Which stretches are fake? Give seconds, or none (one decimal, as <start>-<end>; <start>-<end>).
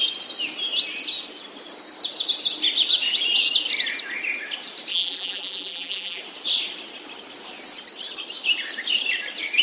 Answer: 4.9-6.2